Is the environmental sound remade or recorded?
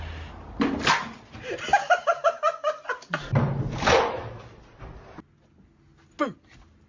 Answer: recorded